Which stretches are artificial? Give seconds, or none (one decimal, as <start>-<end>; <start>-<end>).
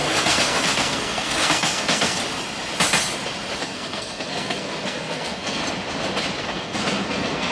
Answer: 0.0-2.2; 3.6-5.6; 6.4-7.5